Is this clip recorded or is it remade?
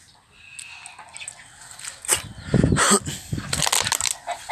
recorded